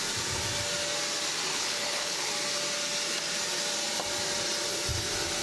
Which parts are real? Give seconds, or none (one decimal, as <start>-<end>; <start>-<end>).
0.0-1.5; 2.3-5.4